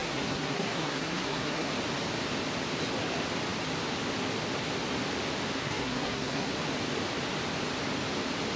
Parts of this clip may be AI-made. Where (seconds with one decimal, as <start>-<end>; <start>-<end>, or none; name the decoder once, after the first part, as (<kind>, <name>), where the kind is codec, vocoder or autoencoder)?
0.0-1.7 (codec, SNAC); 5.6-6.5